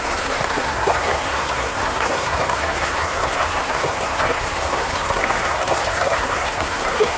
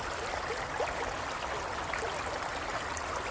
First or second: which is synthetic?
first